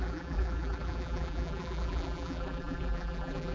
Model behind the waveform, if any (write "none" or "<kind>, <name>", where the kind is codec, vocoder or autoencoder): vocoder, BigVGAN v2